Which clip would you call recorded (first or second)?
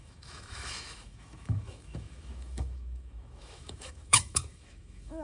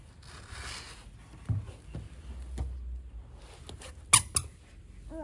second